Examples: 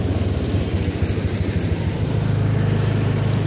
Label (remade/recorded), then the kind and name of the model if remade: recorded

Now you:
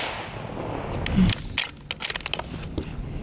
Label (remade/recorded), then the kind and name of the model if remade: recorded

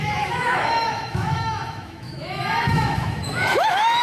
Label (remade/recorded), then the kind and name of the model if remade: remade, autoencoder, DAC-VAE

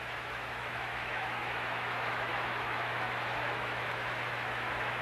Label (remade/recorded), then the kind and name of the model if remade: remade, autoencoder, DAC-VAE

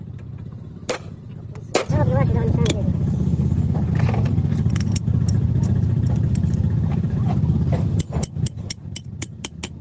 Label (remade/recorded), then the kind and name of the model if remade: recorded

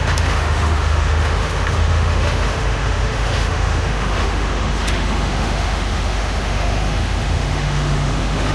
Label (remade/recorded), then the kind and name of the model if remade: remade, autoencoder, DAC-VAE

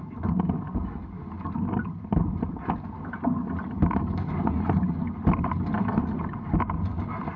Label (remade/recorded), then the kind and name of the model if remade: recorded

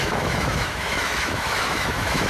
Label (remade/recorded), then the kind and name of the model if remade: remade, autoencoder, DAC-VAE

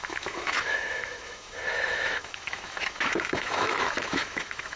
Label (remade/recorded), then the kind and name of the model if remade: remade, autoencoder, DAC-VAE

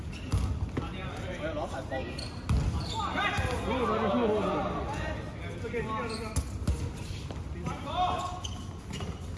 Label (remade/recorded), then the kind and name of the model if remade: recorded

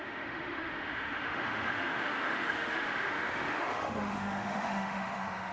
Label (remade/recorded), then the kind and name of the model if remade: remade, autoencoder, DAC-VAE